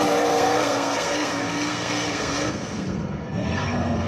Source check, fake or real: fake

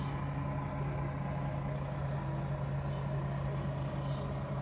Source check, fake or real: real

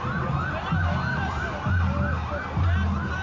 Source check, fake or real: real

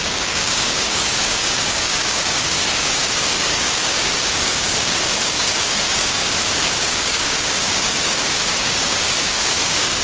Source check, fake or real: fake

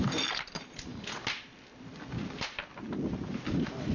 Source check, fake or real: real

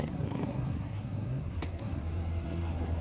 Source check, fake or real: fake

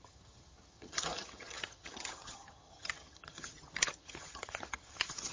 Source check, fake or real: fake